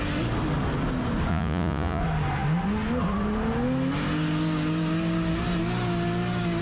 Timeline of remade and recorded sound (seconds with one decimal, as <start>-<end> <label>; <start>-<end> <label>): 0.0-1.3 recorded; 1.3-2.0 remade; 2.0-6.6 recorded

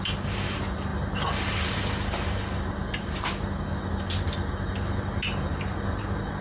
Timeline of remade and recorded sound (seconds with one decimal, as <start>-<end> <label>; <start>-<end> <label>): 0.0-6.4 recorded

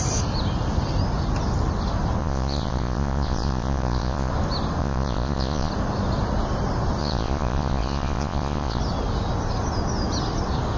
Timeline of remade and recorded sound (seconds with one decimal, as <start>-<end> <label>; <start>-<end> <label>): 0.0-2.2 recorded; 2.2-4.3 remade; 4.3-4.8 recorded; 4.8-5.7 remade; 5.7-7.0 recorded; 7.0-8.8 remade; 8.8-10.8 recorded

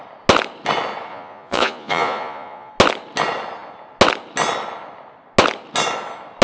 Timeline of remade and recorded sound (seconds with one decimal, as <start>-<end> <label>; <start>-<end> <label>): 0.0-1.1 recorded; 1.1-2.7 remade; 2.7-6.4 recorded

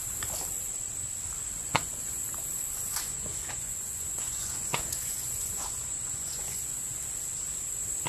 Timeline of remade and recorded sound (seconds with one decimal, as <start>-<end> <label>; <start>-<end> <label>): 0.0-1.6 recorded; 1.6-2.2 remade; 2.2-2.9 recorded; 2.9-6.9 remade; 6.9-8.1 recorded

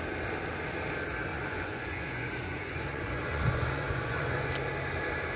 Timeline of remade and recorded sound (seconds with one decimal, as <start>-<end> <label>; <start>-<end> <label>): 0.0-1.3 recorded; 1.3-4.5 remade; 4.5-5.4 recorded